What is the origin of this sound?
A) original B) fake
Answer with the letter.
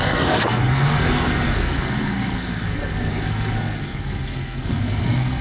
B